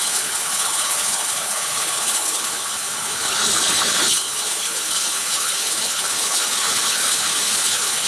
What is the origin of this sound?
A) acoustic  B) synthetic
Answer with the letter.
B